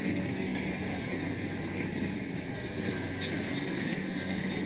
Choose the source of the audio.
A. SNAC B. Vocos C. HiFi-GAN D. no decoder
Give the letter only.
A